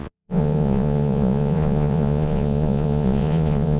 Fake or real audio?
fake